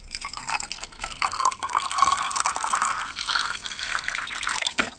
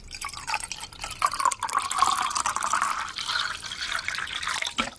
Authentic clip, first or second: second